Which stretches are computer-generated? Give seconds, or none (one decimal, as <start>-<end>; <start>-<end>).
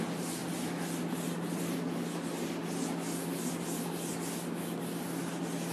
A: none